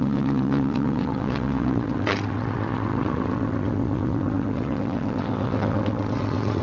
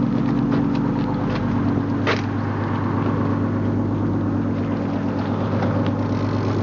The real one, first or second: second